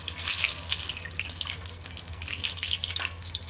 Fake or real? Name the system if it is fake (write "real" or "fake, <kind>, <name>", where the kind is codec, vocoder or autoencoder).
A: fake, codec, SNAC